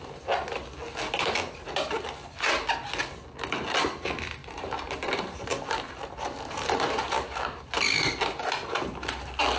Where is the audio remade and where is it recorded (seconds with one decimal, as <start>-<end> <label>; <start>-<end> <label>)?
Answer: 0.0-4.4 recorded; 4.4-7.6 remade; 7.6-9.6 recorded